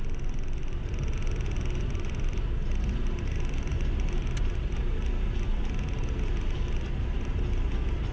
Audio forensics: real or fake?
real